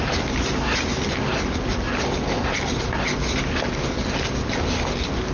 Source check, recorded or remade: recorded